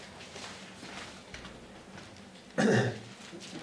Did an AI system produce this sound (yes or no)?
no